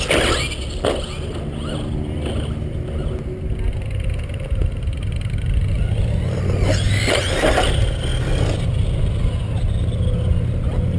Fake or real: real